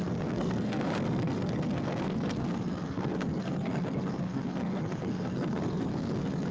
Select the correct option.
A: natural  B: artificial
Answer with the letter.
B